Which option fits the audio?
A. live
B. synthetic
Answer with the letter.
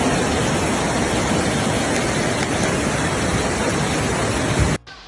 A